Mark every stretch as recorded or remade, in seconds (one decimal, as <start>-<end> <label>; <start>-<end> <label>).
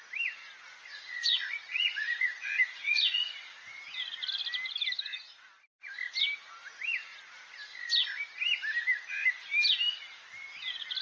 0.0-0.9 recorded; 0.9-3.8 remade; 3.8-11.0 recorded